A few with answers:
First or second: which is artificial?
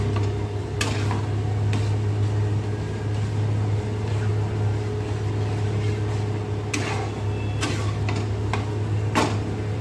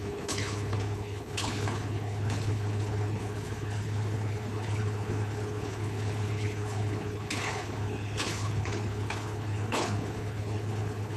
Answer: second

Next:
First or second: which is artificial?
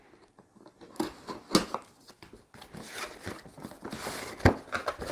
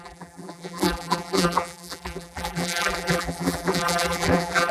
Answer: second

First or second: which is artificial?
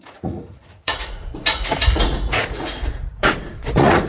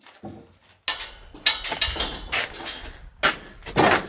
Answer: first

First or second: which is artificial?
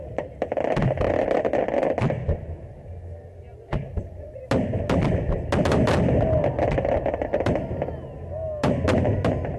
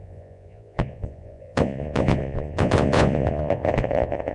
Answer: second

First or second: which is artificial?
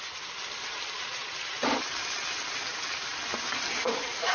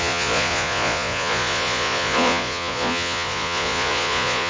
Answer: second